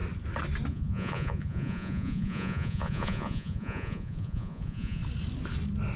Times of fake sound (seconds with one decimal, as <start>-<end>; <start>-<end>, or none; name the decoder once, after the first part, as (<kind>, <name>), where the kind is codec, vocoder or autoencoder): 0.7-5.0 (vocoder, Vocos)